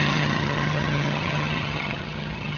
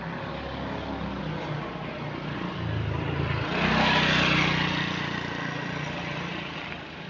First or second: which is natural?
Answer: second